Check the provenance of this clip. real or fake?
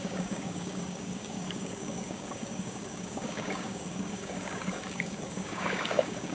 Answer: fake